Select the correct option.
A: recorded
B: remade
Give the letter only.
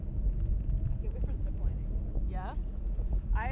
A